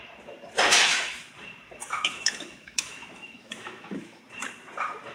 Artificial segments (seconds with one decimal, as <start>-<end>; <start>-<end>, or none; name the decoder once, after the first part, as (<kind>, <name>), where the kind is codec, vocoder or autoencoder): 0.7-1.3 (autoencoder, DAC-VAE); 1.8-4.2